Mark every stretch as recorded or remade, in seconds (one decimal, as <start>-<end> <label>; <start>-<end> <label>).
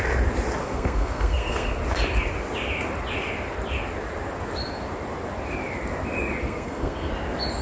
0.0-0.6 recorded; 0.6-1.8 remade; 1.8-6.4 recorded; 6.4-7.1 remade; 7.1-7.6 recorded